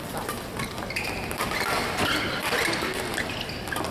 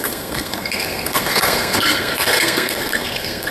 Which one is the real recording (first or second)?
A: first